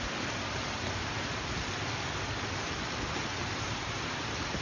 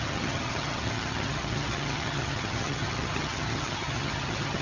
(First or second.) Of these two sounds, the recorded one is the first